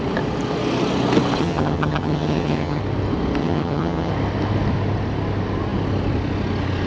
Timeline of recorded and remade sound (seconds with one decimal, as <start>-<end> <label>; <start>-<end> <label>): 0.0-1.4 recorded; 1.4-2.8 remade; 2.8-3.4 recorded; 3.4-4.1 remade; 4.1-6.9 recorded